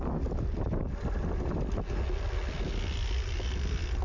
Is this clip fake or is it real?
real